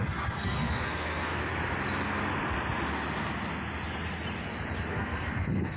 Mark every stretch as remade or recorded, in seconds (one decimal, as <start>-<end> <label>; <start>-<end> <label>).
0.0-1.4 remade; 1.4-4.9 recorded; 4.9-5.8 remade